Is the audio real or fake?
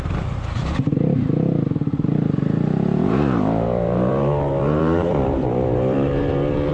fake